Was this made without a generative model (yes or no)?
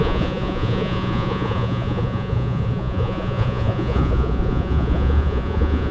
no